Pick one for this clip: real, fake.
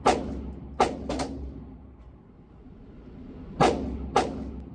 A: real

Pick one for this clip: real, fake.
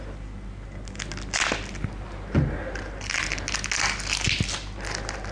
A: real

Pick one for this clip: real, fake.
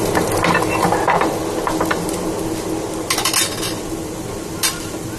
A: real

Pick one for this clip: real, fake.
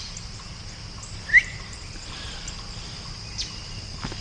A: real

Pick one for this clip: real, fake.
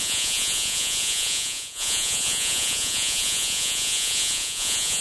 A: fake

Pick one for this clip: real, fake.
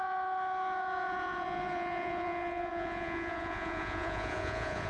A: fake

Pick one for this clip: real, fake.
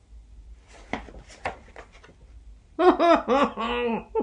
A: real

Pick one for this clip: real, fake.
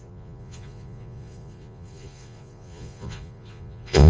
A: fake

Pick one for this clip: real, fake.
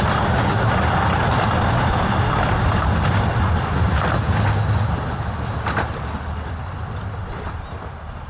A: real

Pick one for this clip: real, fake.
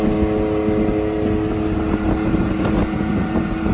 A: real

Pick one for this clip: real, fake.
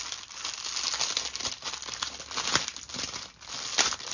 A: real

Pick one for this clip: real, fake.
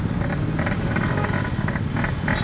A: real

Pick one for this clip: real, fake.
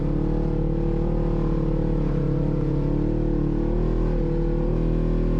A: real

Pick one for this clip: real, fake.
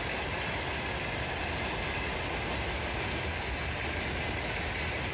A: real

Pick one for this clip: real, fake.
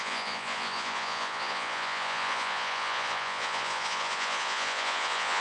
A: fake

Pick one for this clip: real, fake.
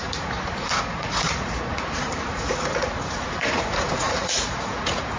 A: fake